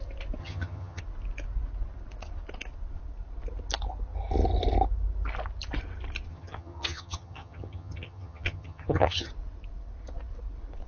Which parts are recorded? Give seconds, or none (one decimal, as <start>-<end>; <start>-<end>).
0.0-0.4; 1.0-6.3; 9.3-10.9